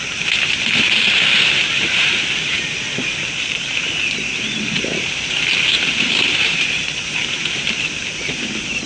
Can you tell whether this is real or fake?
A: real